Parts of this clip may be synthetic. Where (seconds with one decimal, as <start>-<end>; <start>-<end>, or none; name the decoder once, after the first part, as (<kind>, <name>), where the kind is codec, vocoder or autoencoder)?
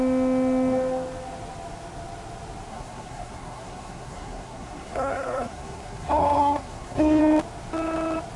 2.7-7.2 (codec, SNAC)